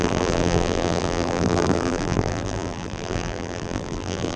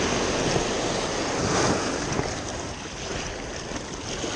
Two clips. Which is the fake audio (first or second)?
first